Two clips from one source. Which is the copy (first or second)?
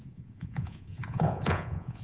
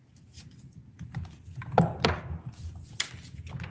first